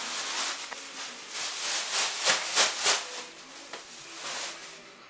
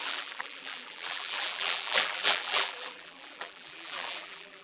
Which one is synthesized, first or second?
second